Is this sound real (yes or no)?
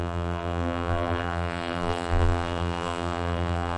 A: no